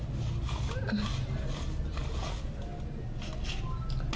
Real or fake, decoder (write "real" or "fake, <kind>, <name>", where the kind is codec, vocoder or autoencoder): real